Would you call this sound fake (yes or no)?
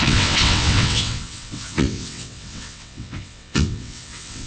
yes